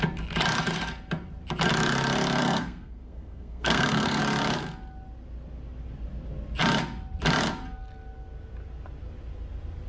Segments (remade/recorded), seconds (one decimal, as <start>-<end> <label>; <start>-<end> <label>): 0.0-2.4 recorded; 2.4-4.2 remade; 4.2-9.9 recorded